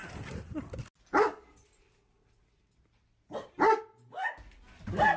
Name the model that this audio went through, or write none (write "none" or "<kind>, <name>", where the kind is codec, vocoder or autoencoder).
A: none